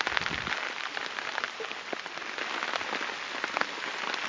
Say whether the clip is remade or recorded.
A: recorded